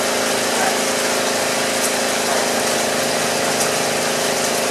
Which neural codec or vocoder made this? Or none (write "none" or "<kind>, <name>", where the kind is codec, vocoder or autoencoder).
none